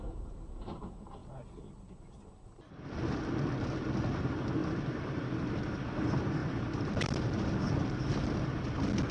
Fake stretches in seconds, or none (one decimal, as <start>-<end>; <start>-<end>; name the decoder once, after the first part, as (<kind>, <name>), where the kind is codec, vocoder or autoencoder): 1.2-1.9 (vocoder, BigVGAN v2); 4.6-5.8; 6.4-8.5